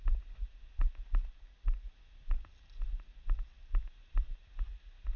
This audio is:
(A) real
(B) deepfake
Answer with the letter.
A